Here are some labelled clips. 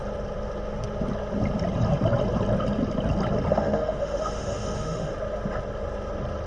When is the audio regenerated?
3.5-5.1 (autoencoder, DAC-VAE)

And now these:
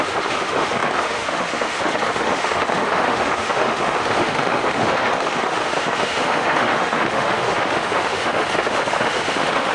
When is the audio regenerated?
0.0-9.7 (autoencoder, DAC-VAE)

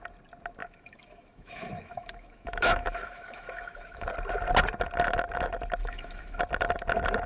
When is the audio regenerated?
0.6-4.1 (autoencoder, DAC-VAE); 5.8-6.4

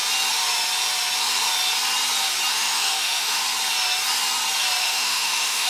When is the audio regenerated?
2.5-3.4 (autoencoder, DAC-VAE); 4.8-5.7

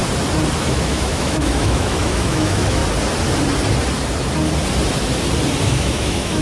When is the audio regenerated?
0.6-2.8 (autoencoder, DAC-VAE); 5.6-6.4

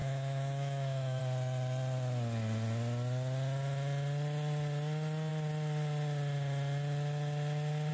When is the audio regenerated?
0.0-1.2 (autoencoder, DAC-VAE)

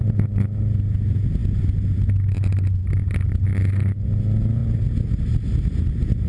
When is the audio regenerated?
none